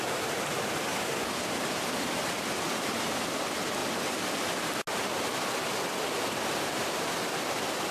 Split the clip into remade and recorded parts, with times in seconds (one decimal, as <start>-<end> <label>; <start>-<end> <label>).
0.0-7.9 recorded